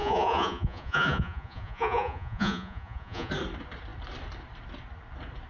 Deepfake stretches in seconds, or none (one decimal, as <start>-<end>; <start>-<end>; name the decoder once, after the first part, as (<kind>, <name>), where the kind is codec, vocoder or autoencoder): 0.0-3.3 (vocoder, Vocos)